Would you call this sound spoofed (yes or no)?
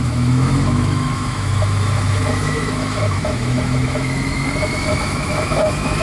yes